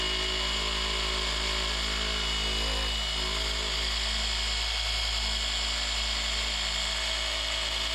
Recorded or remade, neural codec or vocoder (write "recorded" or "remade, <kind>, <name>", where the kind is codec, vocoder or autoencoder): recorded